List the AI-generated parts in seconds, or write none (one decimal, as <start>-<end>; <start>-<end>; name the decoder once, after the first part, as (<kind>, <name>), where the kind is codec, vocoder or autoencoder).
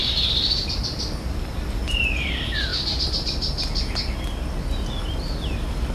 none